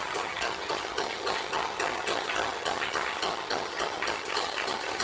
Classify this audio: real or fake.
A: fake